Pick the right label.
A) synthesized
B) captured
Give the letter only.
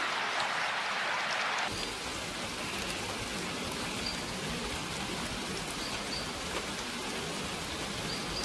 B